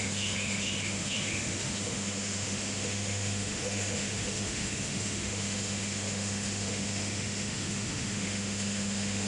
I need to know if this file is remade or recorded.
remade